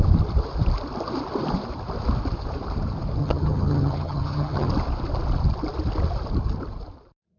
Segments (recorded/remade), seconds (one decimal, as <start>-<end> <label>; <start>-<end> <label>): 0.0-3.2 recorded; 3.2-4.7 remade; 4.7-7.4 recorded